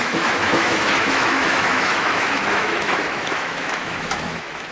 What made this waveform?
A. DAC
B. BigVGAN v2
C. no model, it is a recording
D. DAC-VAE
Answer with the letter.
D